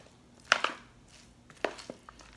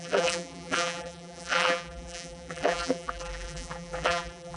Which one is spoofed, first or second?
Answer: second